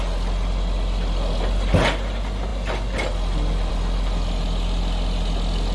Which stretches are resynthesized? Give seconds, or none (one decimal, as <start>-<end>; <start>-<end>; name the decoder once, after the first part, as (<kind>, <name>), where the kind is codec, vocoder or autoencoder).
none